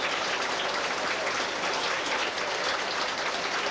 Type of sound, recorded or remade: remade